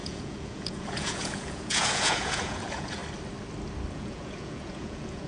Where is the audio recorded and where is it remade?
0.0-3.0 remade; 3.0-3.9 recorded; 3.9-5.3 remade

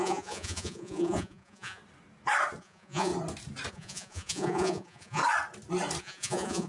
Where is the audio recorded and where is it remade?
0.0-1.8 remade; 1.8-2.6 recorded; 2.6-3.1 remade; 3.1-3.7 recorded; 3.7-5.2 remade; 5.2-6.0 recorded; 6.0-6.7 remade

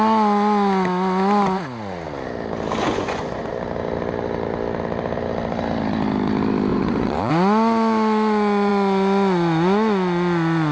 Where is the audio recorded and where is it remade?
0.0-2.8 recorded; 2.8-3.5 remade; 3.5-6.7 recorded; 6.7-7.3 remade; 7.3-10.7 recorded

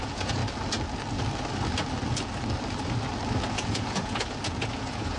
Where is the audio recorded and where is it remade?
0.0-0.4 remade; 0.4-3.5 recorded; 3.5-5.2 remade